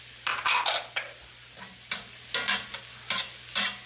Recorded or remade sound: recorded